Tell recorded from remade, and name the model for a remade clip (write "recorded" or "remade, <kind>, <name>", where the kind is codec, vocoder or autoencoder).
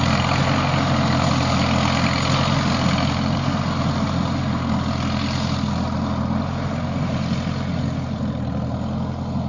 recorded